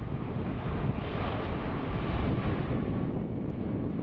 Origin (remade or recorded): recorded